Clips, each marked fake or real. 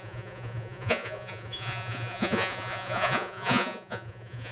fake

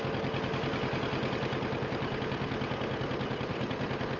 real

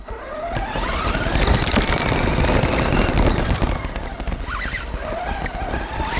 real